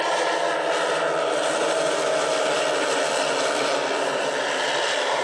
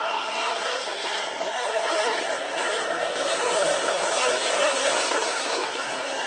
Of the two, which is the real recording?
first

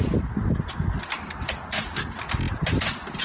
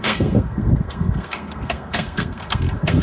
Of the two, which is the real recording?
first